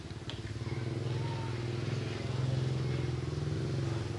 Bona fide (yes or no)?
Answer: yes